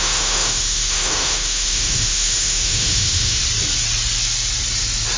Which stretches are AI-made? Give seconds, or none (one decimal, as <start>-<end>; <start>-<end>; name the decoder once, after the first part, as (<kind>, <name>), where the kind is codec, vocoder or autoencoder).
0.0-3.4 (autoencoder, DAC-VAE)